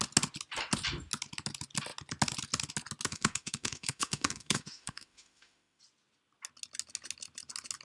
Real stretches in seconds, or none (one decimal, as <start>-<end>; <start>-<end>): 0.0-3.1; 5.8-7.8